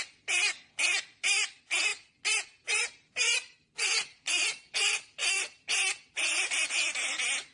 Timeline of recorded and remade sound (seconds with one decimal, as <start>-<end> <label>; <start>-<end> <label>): 0.0-1.9 remade; 1.9-3.7 recorded; 3.7-5.2 remade; 5.2-6.1 recorded; 6.1-7.5 remade